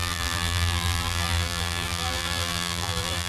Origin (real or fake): fake